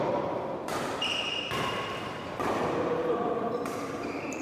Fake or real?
fake